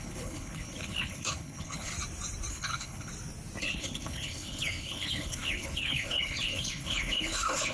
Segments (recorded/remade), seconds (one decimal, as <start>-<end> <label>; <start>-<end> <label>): 0.0-1.9 remade; 1.9-2.5 recorded; 2.5-3.1 remade; 3.1-3.6 recorded; 3.6-7.7 remade